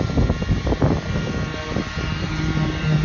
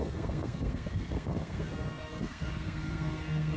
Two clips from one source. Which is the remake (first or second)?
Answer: second